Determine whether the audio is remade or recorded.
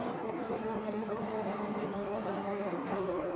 remade